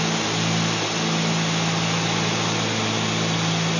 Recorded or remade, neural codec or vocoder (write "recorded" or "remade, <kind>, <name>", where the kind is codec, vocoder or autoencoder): recorded